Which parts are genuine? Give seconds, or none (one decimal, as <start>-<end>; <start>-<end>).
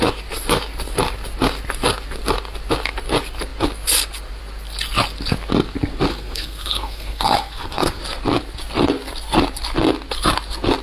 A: 0.0-6.1; 8.0-10.8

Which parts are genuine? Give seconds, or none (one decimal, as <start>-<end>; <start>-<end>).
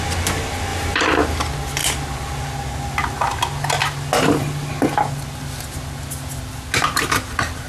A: 0.0-0.7; 1.4-7.7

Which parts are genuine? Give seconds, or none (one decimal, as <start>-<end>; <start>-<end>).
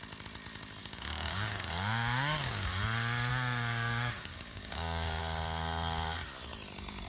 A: 0.0-0.8; 2.8-3.3; 5.2-7.1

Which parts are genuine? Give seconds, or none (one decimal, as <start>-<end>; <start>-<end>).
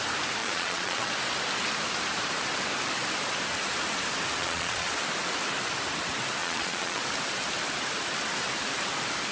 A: 0.0-0.4; 1.1-4.4; 4.9-6.4; 7.0-9.3